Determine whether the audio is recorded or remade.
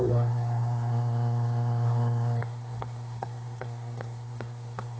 remade